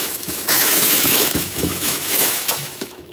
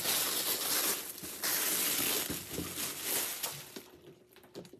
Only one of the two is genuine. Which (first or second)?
second